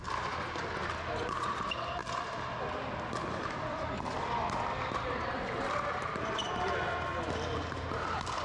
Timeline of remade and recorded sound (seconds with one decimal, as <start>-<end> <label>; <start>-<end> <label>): 0.0-8.4 recorded